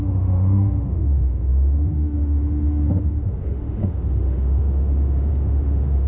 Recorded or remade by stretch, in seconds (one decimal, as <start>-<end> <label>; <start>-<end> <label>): 0.0-6.1 remade